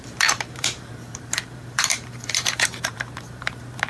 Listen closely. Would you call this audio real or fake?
fake